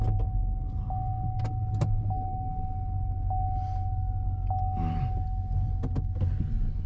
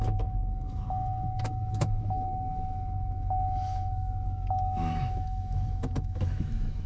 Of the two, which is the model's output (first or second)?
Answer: second